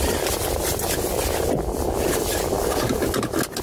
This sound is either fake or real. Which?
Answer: real